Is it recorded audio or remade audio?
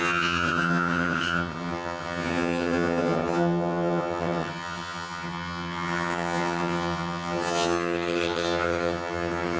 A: remade